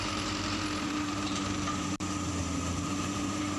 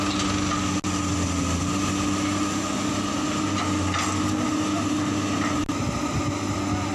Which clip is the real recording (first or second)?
second